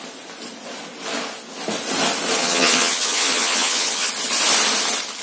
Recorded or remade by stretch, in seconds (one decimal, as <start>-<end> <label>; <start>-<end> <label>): 0.0-2.4 recorded; 2.4-4.1 remade; 4.1-5.2 recorded